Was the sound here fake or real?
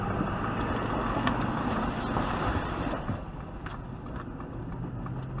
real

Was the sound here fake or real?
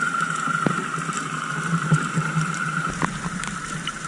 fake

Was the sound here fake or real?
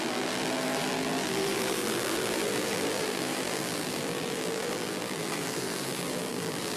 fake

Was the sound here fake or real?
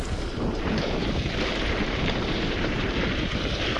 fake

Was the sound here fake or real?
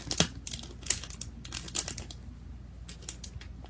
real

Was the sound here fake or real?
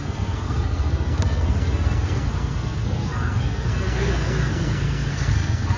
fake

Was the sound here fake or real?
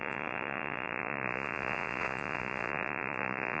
fake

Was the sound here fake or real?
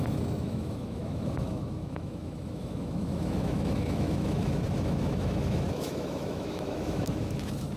fake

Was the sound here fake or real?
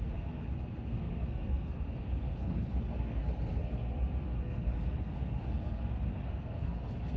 fake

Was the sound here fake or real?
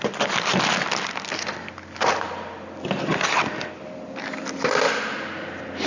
real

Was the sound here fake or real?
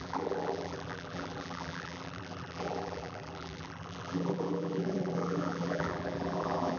fake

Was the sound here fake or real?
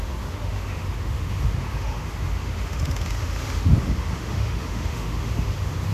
fake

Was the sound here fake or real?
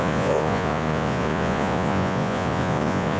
fake